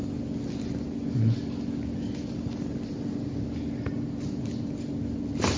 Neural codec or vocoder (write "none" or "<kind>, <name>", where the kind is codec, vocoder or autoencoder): none